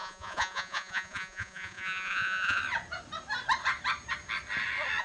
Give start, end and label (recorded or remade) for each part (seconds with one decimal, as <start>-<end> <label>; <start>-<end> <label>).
0.0-2.6 remade; 2.6-5.0 recorded